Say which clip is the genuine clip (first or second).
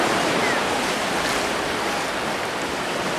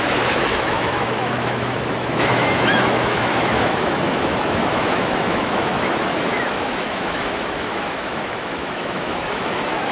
first